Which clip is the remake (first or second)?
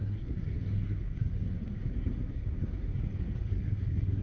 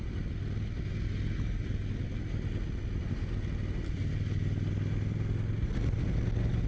first